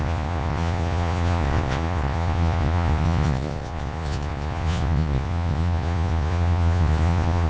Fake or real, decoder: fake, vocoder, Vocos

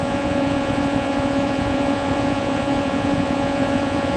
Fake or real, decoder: fake, vocoder, Vocos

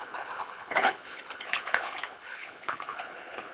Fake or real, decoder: fake, codec, HILCodec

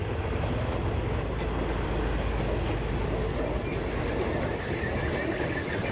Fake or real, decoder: real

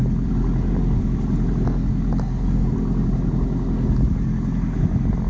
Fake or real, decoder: real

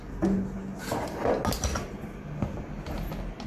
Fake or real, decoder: real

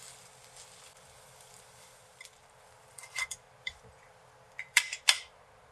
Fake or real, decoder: fake, vocoder, BigVGAN v2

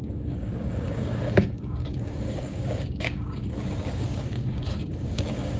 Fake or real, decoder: fake, codec, DAC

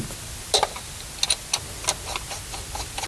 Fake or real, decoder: real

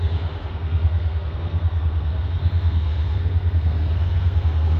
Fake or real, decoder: fake, codec, SNAC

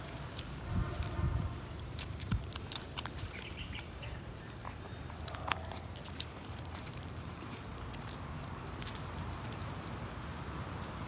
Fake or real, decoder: fake, vocoder, BigVGAN v2